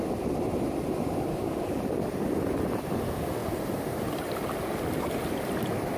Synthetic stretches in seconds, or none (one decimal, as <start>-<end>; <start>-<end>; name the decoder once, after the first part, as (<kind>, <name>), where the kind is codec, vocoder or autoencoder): 1.3-1.8 (codec, DAC)